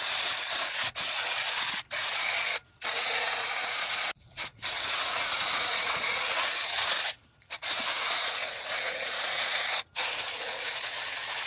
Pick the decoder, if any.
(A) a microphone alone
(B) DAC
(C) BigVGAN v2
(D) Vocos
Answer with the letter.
D